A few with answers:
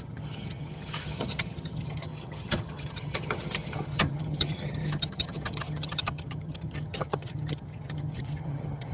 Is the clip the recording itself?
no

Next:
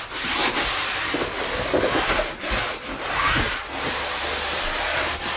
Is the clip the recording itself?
yes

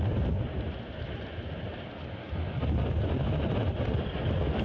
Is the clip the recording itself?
yes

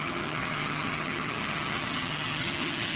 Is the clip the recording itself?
no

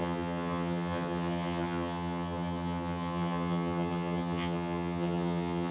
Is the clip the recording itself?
no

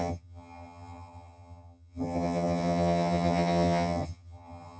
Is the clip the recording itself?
no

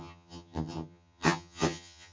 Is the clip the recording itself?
no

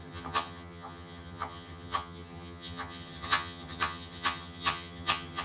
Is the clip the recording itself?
no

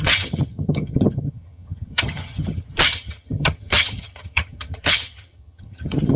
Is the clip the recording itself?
no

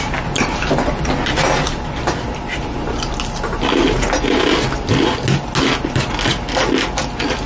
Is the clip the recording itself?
yes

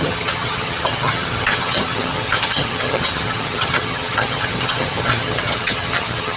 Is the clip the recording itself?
no